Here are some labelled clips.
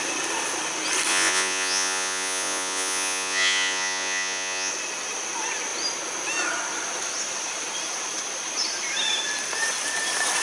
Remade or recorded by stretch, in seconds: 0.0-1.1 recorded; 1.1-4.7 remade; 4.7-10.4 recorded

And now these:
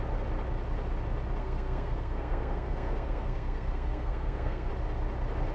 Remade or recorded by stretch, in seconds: 0.0-1.4 recorded; 1.4-4.7 remade; 4.7-5.5 recorded

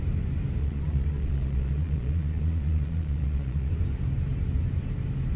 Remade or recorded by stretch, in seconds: 0.0-0.6 recorded; 0.6-3.7 remade; 3.7-5.4 recorded

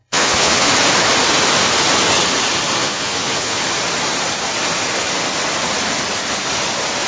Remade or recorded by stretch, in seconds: 0.0-0.7 remade; 0.7-2.8 recorded; 2.8-3.6 remade; 3.6-7.1 recorded